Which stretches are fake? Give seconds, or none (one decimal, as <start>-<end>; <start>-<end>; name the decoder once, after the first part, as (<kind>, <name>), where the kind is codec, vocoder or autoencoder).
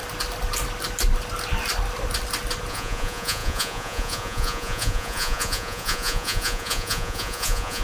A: 2.7-7.8 (vocoder, Vocos)